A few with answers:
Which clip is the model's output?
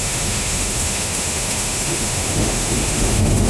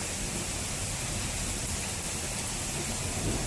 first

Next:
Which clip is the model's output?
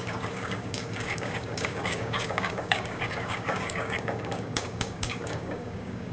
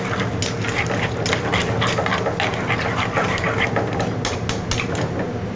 first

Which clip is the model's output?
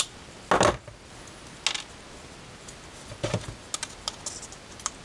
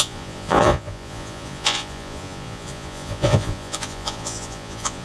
second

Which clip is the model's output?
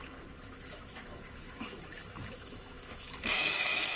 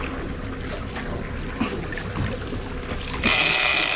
first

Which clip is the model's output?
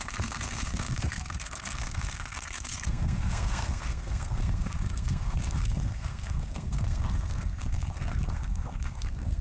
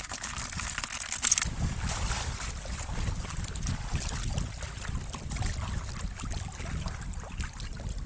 first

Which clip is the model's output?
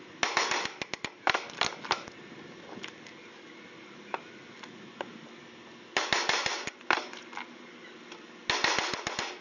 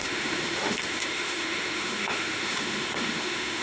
second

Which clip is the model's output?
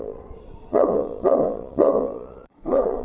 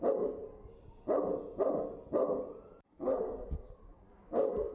first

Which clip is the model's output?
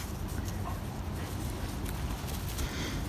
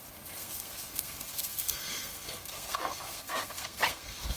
second